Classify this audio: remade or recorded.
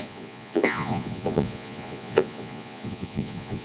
remade